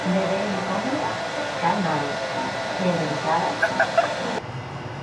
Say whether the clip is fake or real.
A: real